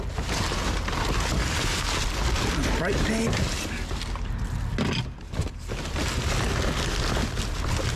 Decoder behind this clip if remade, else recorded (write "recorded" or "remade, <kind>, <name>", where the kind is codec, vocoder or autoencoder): recorded